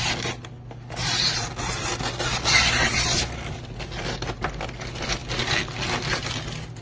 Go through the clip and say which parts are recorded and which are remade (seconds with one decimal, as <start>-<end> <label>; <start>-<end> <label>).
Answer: 0.0-6.8 recorded